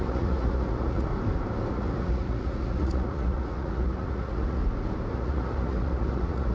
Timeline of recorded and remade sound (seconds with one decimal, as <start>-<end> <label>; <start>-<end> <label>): 0.0-1.1 remade; 1.1-1.7 recorded; 1.7-4.6 remade; 4.6-5.1 recorded; 5.1-6.5 remade